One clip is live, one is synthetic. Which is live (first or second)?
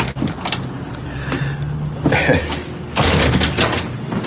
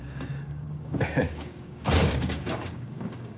first